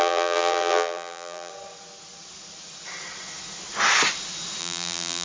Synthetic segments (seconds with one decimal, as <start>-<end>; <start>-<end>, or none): 0.0-1.5; 4.6-5.2